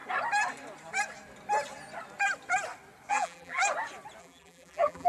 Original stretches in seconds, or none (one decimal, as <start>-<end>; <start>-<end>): 0.0-3.1; 3.6-4.2